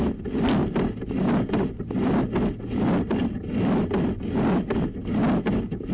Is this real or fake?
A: real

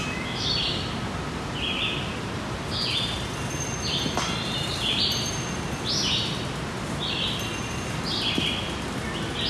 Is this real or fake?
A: real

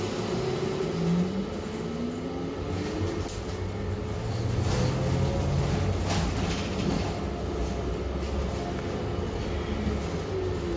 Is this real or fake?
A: real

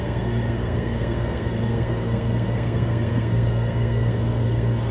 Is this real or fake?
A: fake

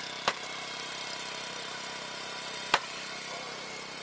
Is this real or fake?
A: real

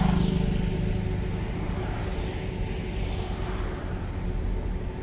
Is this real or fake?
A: real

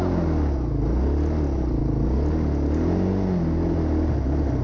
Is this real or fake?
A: real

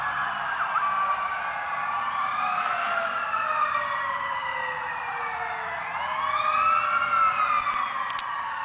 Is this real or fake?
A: real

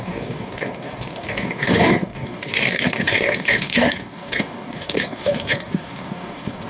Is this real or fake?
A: fake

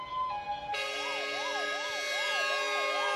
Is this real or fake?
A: real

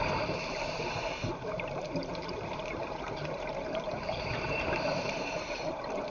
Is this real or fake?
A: fake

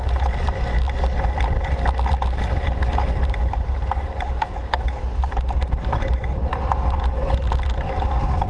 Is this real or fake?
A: real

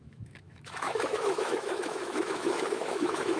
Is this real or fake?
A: fake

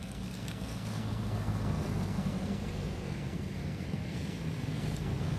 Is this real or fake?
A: fake